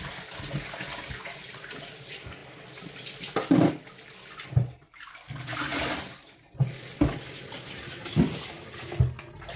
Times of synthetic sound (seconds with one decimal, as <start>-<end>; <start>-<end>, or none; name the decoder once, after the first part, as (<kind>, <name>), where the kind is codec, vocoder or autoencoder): none